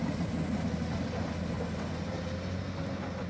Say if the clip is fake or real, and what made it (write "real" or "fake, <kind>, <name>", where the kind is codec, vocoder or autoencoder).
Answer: real